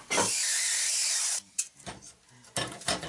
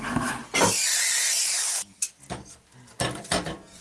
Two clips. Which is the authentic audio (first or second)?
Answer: second